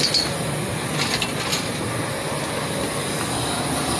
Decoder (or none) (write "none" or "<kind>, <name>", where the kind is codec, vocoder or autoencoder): none